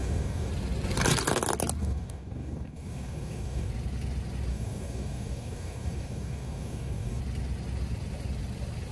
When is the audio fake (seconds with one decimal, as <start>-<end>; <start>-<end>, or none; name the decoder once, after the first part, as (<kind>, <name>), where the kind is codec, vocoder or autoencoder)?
0.0-0.5 (codec, DAC); 1.8-3.7; 4.5-7.2